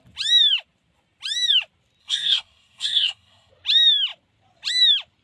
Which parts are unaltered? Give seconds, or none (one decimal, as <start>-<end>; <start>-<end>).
0.0-2.0; 3.5-5.2